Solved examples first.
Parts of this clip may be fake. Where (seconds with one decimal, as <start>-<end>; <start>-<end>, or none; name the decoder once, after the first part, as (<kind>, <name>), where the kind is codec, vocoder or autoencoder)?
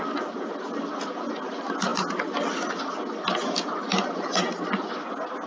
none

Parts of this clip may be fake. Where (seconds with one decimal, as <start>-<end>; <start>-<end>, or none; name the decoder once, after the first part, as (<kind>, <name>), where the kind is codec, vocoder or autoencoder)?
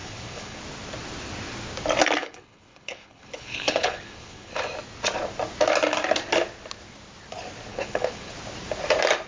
0.0-0.6 (codec, HILCodec); 2.2-4.6; 7.7-8.3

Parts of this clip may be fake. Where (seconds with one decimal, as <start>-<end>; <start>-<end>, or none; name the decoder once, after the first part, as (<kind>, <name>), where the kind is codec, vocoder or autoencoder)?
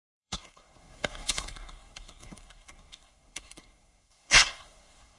0.0-5.2 (codec, SNAC)